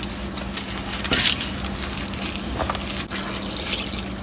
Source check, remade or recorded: recorded